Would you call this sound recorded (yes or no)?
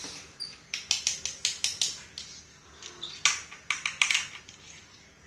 yes